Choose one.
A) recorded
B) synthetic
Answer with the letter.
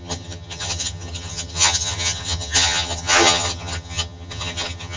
B